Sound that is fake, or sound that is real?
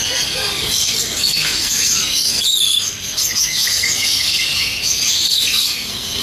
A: fake